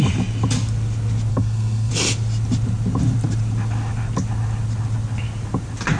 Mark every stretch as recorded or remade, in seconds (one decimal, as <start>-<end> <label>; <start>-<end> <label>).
0.0-1.3 recorded; 1.3-1.9 remade; 1.9-6.0 recorded